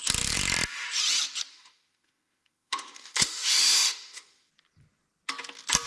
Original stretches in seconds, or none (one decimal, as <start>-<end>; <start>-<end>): 0.0-1.5; 4.5-5.9